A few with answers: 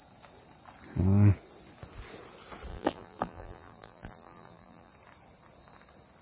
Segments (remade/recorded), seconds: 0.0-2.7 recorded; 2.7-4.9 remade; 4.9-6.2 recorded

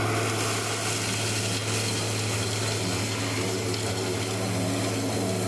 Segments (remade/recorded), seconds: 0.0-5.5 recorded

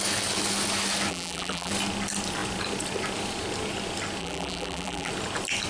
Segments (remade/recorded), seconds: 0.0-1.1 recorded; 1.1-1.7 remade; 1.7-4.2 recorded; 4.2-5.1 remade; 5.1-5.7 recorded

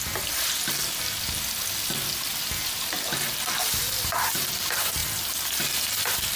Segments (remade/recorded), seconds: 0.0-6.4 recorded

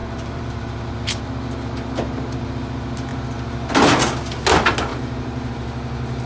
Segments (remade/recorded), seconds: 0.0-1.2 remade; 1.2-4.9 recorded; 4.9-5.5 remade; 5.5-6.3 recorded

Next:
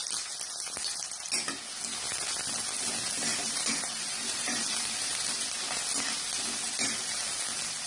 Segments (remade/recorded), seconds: 0.0-3.3 recorded; 3.3-5.2 remade; 5.2-7.9 recorded

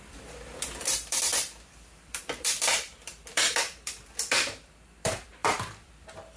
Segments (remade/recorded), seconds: 0.0-6.4 remade

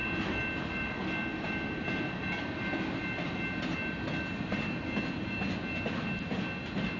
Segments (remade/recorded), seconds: 0.0-7.0 recorded